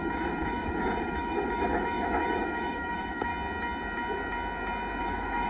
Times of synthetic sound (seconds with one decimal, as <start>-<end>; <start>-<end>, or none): 0.0-3.3; 5.0-5.5